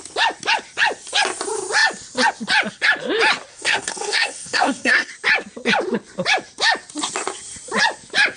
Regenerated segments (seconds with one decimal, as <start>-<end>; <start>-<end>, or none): 3.5-5.1